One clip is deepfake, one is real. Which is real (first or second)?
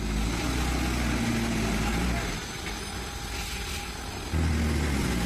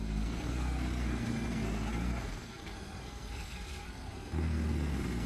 first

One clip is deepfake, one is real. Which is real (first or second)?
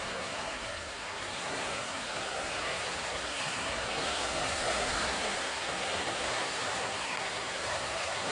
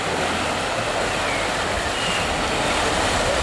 second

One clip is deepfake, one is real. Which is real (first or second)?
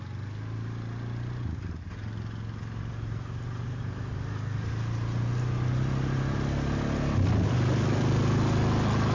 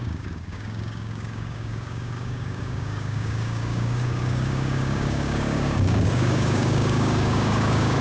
first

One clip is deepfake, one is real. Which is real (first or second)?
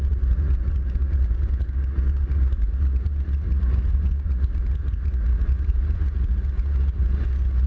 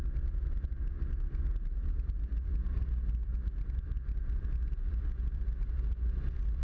second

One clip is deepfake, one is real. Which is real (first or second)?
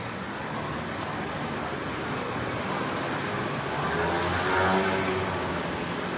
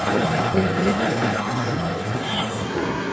first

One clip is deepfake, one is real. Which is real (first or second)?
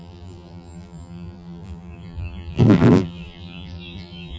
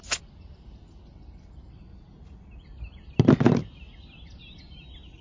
second